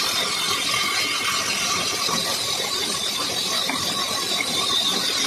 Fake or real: real